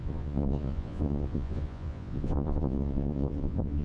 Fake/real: fake